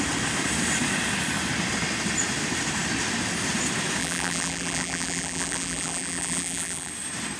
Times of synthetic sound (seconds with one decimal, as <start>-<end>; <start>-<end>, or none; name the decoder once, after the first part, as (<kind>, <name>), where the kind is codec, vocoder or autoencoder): 4.0-6.9 (vocoder, BigVGAN v2)